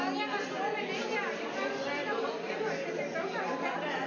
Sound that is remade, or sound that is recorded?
recorded